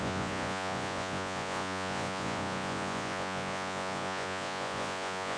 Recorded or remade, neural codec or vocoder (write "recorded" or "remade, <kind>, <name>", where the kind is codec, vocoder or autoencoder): remade, vocoder, Vocos